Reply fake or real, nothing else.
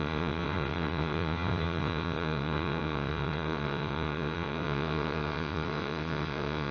fake